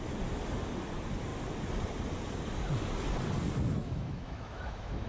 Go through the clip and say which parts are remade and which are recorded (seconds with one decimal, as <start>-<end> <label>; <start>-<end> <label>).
0.0-3.8 recorded; 3.8-5.1 remade